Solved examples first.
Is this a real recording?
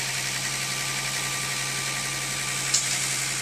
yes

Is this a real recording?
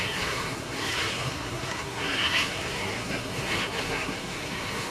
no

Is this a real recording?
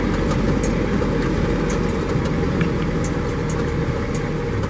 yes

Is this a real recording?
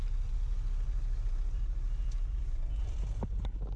yes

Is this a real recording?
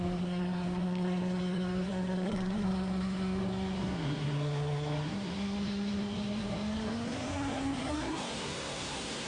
no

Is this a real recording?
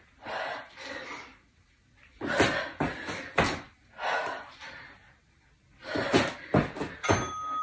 yes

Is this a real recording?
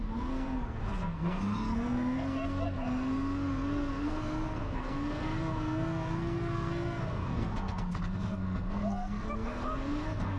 no